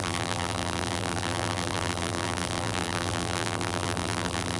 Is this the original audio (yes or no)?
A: no